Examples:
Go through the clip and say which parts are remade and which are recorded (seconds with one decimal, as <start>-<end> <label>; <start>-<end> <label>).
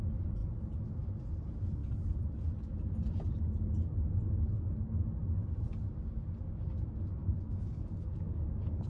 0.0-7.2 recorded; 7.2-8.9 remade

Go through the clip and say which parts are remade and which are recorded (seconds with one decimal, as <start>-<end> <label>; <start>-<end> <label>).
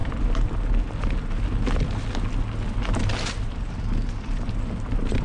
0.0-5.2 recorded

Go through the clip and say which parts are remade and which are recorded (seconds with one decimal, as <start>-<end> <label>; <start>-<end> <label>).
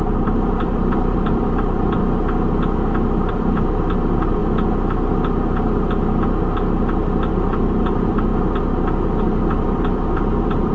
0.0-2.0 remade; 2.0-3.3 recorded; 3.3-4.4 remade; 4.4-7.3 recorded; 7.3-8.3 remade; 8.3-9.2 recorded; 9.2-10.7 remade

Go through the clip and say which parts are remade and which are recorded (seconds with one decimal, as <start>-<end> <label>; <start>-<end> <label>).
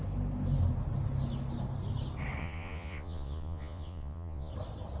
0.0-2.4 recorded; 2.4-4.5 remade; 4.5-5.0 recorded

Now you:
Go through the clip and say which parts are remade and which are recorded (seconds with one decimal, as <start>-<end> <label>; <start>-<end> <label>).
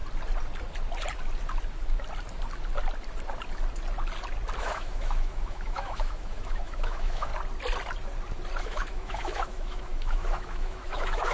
0.0-4.6 recorded; 4.6-7.3 remade; 7.3-8.6 recorded; 8.6-11.3 remade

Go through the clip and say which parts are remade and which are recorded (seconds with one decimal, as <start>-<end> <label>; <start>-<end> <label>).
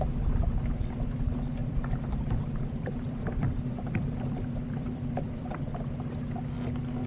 0.0-1.6 recorded; 1.6-5.7 remade; 5.7-7.1 recorded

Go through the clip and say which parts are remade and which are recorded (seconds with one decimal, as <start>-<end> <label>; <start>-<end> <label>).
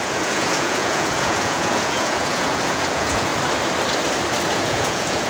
0.0-3.3 remade; 3.3-4.6 recorded; 4.6-5.3 remade